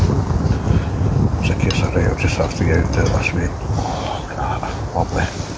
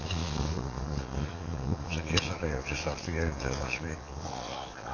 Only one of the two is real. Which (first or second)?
first